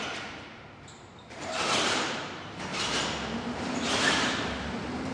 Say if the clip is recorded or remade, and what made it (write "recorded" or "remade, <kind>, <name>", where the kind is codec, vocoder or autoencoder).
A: remade, vocoder, BigVGAN v2